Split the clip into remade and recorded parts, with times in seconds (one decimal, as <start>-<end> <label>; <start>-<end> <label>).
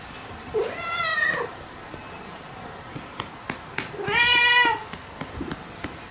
0.0-6.1 recorded